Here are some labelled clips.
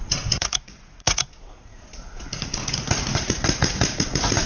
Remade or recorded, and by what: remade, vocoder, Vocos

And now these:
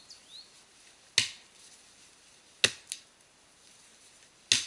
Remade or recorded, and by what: recorded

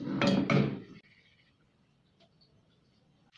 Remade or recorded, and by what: recorded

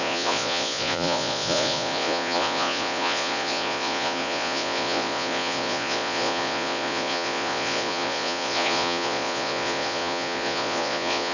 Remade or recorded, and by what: remade, vocoder, Vocos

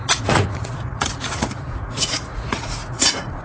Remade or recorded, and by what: remade, vocoder, Vocos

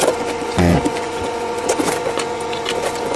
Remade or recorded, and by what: remade, vocoder, Vocos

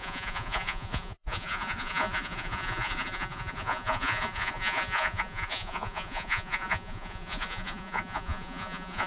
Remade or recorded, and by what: remade, vocoder, Vocos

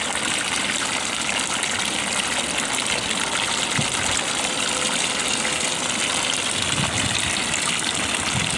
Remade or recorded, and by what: recorded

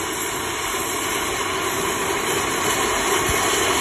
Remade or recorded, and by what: recorded